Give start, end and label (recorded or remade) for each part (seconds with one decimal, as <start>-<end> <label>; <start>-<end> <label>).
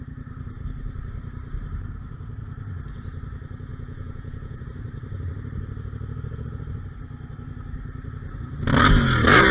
0.0-3.7 recorded; 3.7-4.6 remade; 4.6-9.5 recorded